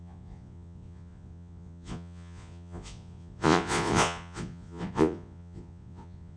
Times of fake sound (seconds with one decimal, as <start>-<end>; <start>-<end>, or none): 0.0-6.4